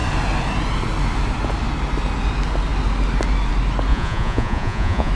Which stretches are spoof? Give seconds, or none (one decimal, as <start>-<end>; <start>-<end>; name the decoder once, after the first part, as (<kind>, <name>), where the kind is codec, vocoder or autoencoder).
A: 3.9-5.1 (vocoder, Vocos)